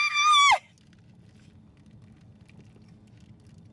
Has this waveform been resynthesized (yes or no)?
no